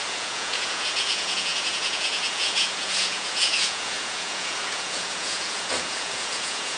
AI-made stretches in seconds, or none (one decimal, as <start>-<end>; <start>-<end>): 0.0-6.8